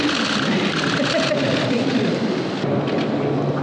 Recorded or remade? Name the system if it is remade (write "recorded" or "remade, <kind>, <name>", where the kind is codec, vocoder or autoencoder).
recorded